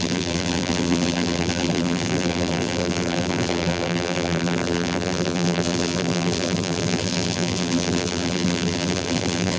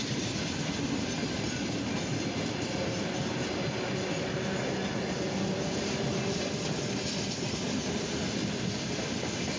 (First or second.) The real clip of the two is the second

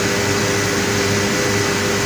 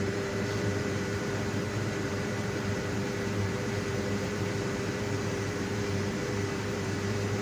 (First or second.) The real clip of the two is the first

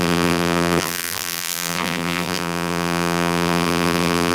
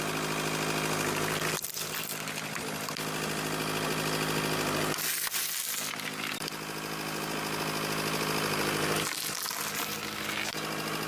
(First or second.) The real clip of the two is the second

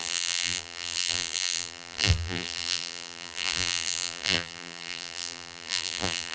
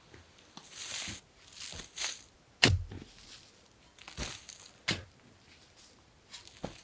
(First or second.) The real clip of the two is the second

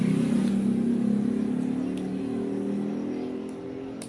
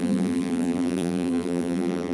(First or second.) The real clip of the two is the first